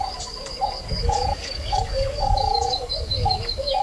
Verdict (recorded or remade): remade